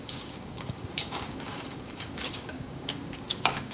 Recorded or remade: remade